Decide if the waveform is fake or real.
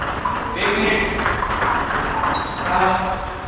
real